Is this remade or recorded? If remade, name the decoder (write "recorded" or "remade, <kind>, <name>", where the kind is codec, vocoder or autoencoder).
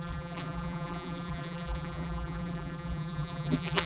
remade, vocoder, BigVGAN v2